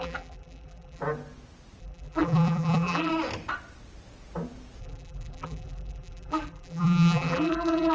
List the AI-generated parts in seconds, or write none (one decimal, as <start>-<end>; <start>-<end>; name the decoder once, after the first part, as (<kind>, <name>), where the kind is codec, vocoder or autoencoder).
0.0-1.0 (vocoder, BigVGAN v2); 1.8-3.1; 4.8-7.9